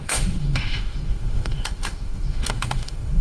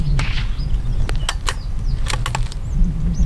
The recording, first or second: second